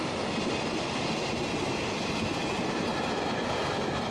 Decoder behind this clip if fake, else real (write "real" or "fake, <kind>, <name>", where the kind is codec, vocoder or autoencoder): real